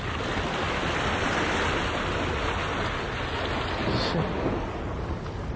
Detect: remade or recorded recorded